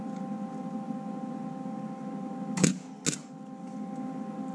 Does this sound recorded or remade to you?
recorded